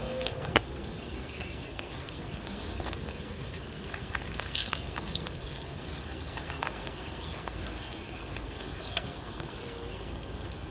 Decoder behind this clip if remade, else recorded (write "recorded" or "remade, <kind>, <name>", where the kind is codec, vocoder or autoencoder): remade, codec, SNAC